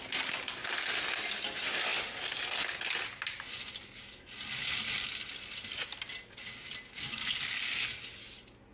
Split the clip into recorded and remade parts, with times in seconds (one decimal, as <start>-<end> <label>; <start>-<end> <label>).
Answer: 0.0-8.7 recorded